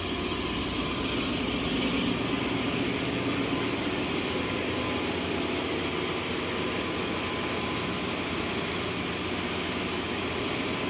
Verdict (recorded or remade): recorded